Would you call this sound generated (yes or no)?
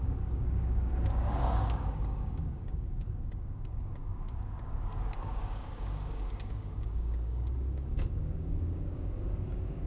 yes